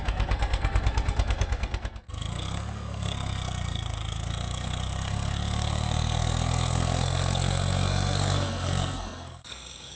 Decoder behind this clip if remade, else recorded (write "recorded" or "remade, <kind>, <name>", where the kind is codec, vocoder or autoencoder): remade, codec, SNAC